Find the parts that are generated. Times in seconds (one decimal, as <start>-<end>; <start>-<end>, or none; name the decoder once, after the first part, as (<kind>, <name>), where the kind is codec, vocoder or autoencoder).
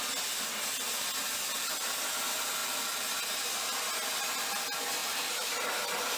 5.0-5.6 (vocoder, BigVGAN v2)